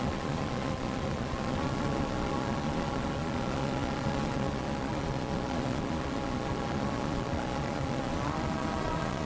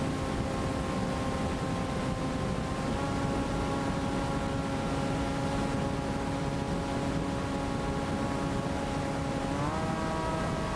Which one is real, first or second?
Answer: second